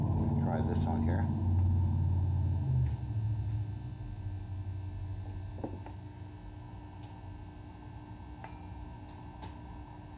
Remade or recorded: recorded